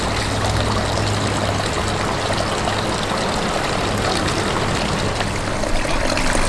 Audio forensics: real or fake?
real